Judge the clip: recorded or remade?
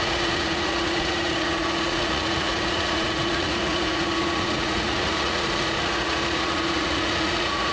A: remade